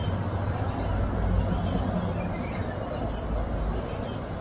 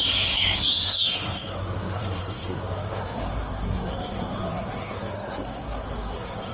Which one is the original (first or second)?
first